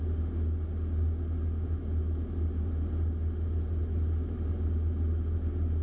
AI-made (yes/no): no